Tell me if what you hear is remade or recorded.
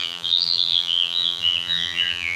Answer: remade